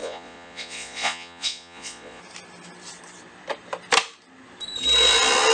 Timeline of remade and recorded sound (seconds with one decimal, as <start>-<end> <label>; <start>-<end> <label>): 0.0-2.2 remade; 2.2-5.5 recorded